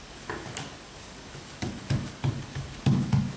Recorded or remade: remade